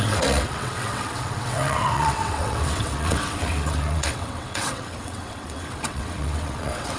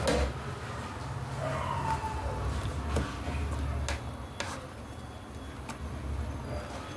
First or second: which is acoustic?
second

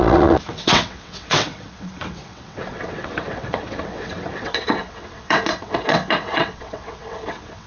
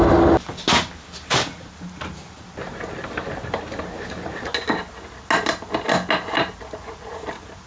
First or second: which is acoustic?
second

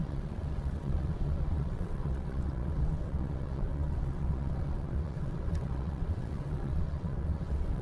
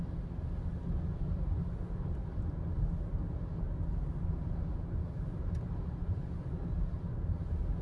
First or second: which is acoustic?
second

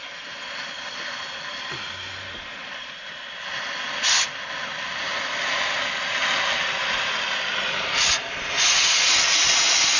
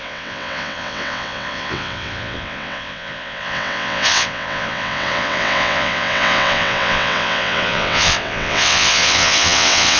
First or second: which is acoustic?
first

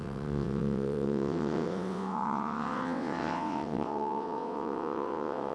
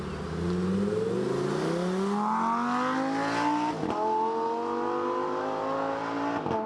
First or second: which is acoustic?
second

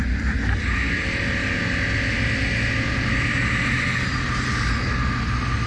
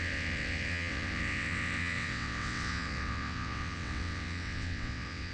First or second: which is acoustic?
first